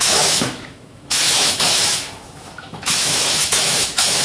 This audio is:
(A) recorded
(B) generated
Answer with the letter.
B